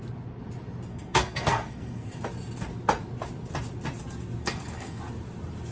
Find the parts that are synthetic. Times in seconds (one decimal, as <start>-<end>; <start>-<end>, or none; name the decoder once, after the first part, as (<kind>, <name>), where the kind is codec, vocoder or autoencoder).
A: 0.9-2.2 (codec, SNAC); 4.4-5.0